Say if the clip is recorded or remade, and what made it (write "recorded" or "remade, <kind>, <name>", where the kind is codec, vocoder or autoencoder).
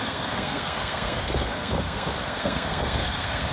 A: remade, codec, SNAC